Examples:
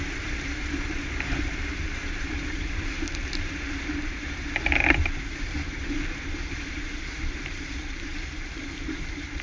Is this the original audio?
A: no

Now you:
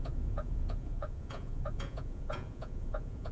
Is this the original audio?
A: no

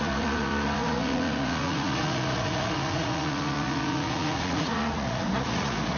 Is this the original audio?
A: no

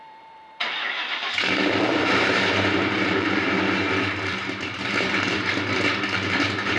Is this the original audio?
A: no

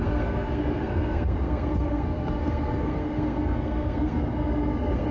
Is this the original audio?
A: no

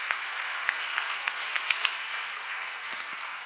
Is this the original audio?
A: no